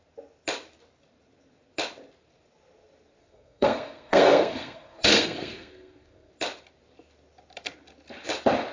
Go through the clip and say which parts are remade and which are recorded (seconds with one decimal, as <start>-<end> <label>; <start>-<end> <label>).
0.0-3.2 recorded; 3.2-6.3 remade; 6.3-8.7 recorded